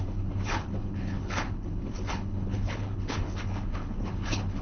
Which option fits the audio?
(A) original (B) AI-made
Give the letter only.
B